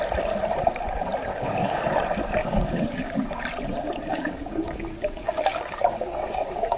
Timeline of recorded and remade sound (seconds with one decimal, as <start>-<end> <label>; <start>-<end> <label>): 0.0-1.3 recorded; 1.3-1.8 remade; 1.8-2.4 recorded; 2.4-3.4 remade; 3.4-4.1 recorded; 4.1-6.8 remade